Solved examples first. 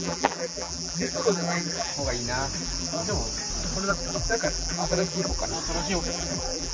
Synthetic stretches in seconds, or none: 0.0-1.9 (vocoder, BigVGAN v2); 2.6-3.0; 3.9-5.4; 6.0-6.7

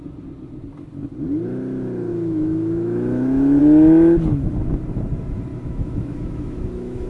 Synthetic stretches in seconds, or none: 2.1-3.6 (autoencoder, DAC-VAE); 5.5-7.1

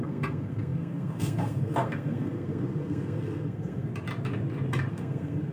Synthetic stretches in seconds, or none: 0.0-3.9 (codec, SNAC); 4.9-5.5

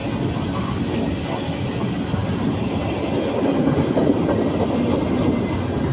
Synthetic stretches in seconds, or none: none

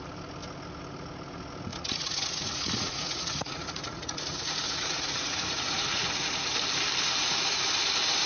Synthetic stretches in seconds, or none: 1.7-6.1 (vocoder, Vocos)

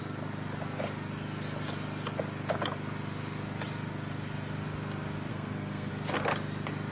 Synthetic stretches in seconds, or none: 5.3-5.9 (codec, SNAC)

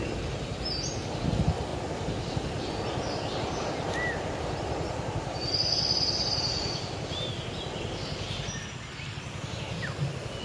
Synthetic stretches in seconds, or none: none

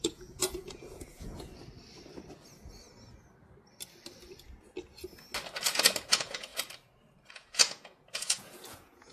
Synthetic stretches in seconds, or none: 0.0-1.5 (vocoder, Vocos); 6.1-6.5; 7.3-9.1